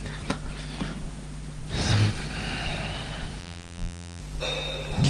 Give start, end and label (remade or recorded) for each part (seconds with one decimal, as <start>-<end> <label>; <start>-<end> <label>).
0.0-3.4 recorded; 3.4-4.2 remade; 4.2-5.1 recorded